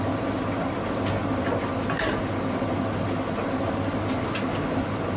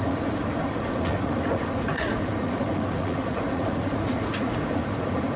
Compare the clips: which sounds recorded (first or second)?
first